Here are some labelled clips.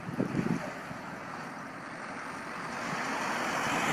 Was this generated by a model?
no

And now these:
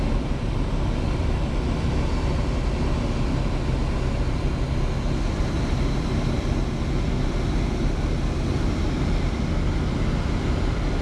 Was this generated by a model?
no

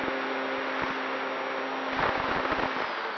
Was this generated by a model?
no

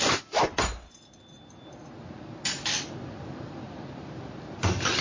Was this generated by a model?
yes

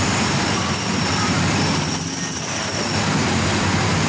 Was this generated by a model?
yes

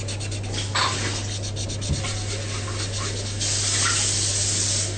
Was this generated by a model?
no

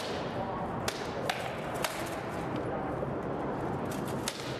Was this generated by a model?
no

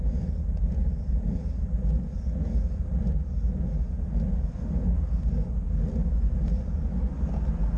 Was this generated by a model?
no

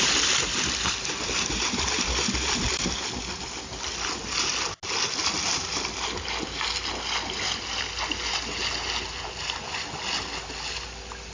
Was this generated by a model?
no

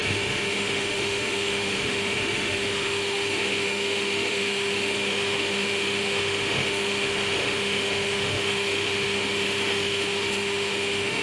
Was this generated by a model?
yes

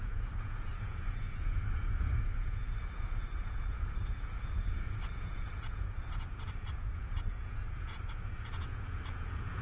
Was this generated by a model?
yes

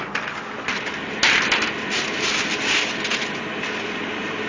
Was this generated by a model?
no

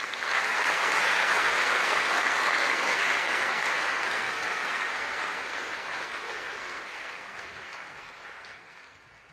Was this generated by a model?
yes